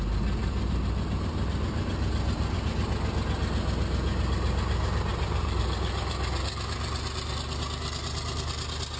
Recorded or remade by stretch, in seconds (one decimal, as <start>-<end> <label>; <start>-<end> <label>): 0.0-0.4 recorded; 0.4-2.9 remade; 2.9-5.1 recorded; 5.1-5.6 remade; 5.6-9.0 recorded